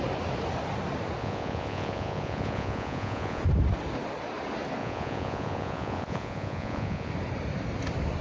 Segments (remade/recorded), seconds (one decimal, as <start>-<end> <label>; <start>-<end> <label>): 0.0-1.2 recorded; 1.2-3.4 remade; 3.4-4.8 recorded; 4.8-7.1 remade; 7.1-8.2 recorded